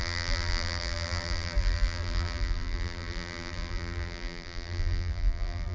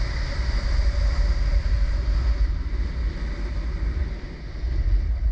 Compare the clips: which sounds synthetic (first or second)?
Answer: first